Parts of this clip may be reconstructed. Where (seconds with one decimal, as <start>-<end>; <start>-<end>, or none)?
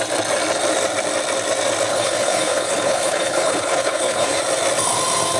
1.9-4.4